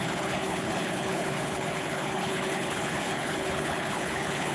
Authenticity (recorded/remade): remade